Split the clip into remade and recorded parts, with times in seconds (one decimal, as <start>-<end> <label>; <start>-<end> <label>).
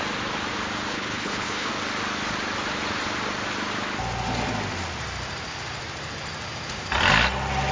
0.0-0.9 recorded; 0.9-1.7 remade; 1.7-7.7 recorded